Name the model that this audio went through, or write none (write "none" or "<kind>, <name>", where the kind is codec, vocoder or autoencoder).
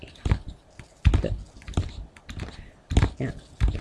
none